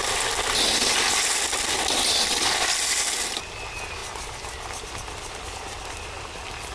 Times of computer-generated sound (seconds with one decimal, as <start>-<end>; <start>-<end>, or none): none